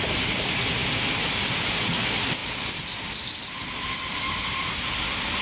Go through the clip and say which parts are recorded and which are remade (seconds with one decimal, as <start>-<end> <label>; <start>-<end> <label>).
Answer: 0.0-5.4 recorded